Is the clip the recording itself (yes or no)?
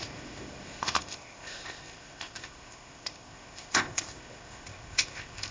no